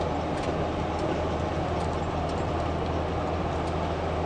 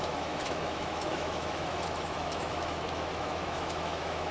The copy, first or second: second